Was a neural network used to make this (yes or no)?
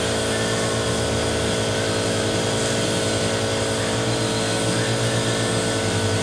no